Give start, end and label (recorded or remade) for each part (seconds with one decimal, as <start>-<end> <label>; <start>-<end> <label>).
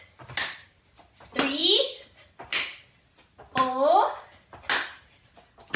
0.0-5.8 recorded